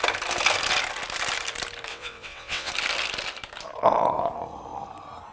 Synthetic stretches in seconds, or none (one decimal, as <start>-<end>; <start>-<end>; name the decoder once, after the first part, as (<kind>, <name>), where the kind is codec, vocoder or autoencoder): 1.9-2.7 (vocoder, WaveNeXt)